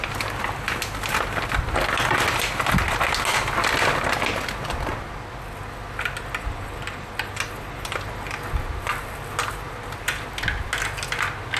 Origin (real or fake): real